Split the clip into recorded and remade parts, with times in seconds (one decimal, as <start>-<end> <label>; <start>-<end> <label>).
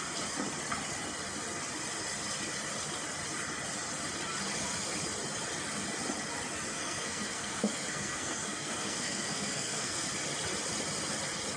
0.0-6.7 recorded; 6.7-10.1 remade; 10.1-11.6 recorded